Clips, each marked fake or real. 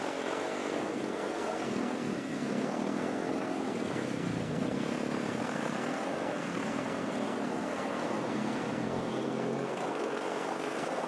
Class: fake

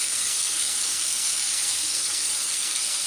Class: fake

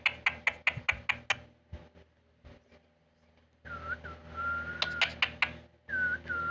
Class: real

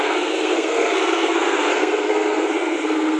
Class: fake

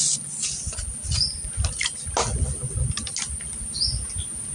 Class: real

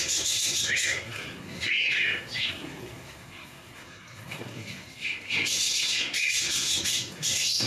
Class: fake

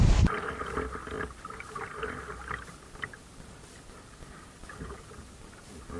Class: real